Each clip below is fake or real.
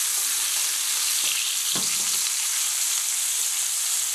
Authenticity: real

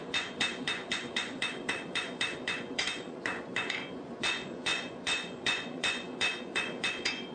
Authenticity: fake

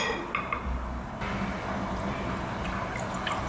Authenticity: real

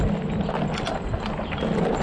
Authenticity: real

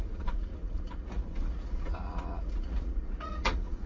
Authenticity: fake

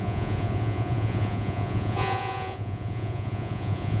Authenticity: fake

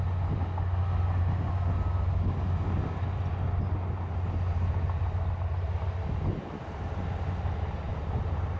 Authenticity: real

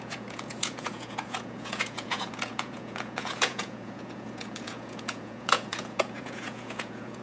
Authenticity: fake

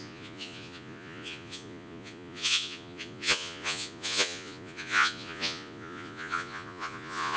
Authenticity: fake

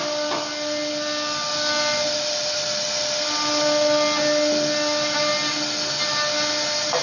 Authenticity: real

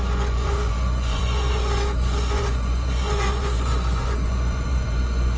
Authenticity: fake